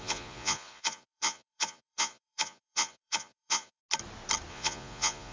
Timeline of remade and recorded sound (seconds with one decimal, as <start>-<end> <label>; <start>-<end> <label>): 0.0-3.8 remade; 3.8-4.5 recorded; 4.5-5.3 remade

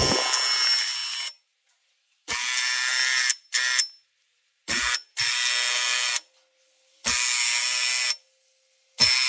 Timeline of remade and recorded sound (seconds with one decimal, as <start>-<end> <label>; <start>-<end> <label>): 0.0-9.3 recorded

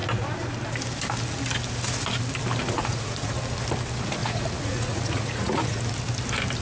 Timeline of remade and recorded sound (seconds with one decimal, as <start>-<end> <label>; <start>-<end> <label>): 0.0-2.6 recorded; 2.6-3.3 remade; 3.3-4.2 recorded; 4.2-5.8 remade; 5.8-6.6 recorded

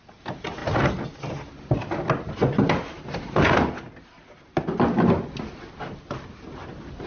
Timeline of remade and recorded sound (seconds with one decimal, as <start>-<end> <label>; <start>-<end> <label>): 0.0-7.1 recorded